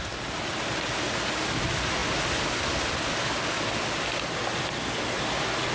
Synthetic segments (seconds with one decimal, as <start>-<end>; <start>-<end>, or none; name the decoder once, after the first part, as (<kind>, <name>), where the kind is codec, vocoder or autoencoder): none